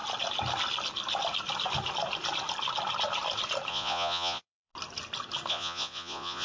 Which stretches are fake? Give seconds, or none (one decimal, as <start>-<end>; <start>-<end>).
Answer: 3.7-4.7; 5.5-6.4